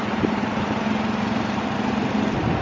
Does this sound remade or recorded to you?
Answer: recorded